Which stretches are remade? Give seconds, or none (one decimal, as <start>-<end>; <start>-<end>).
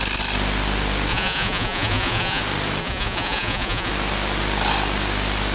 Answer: 1.1-2.4; 2.8-3.9